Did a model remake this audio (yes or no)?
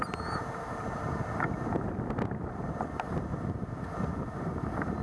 no